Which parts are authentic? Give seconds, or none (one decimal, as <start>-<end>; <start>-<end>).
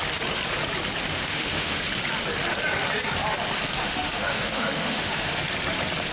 0.0-1.1; 1.8-3.8; 5.3-6.1